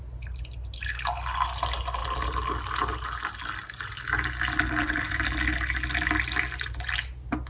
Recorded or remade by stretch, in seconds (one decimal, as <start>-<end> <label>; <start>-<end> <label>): 0.0-7.5 recorded